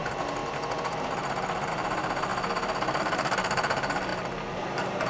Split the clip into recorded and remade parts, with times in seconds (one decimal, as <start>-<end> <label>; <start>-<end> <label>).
0.0-0.4 remade; 0.4-1.7 recorded; 1.7-2.3 remade; 2.3-3.0 recorded; 3.0-5.1 remade